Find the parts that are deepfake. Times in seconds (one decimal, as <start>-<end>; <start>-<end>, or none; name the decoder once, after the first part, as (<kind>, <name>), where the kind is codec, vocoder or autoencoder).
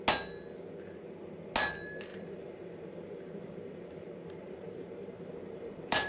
2.1-6.1 (vocoder, BigVGAN v2)